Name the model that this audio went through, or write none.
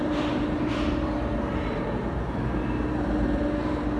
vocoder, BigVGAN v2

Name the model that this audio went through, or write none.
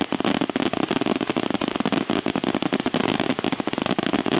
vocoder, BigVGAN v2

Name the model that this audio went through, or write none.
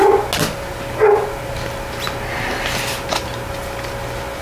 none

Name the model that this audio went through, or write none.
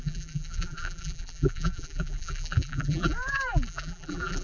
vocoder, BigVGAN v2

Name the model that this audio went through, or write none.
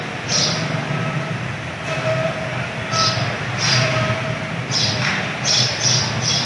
vocoder, BigVGAN v2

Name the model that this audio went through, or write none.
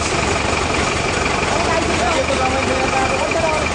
none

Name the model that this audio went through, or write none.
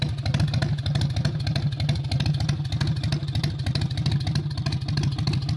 none